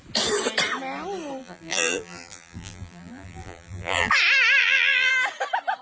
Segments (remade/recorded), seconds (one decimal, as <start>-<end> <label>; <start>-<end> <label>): 0.0-1.4 recorded; 1.4-4.1 remade; 4.1-4.6 recorded; 4.6-5.1 remade; 5.1-5.8 recorded